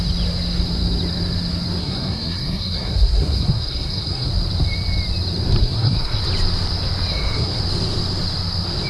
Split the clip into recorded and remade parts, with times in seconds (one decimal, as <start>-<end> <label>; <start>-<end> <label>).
0.0-1.8 recorded; 1.8-4.3 remade; 4.3-5.6 recorded; 5.6-6.2 remade; 6.2-7.1 recorded; 7.1-7.6 remade; 7.6-8.9 recorded